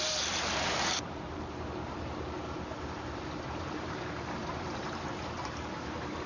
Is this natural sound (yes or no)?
no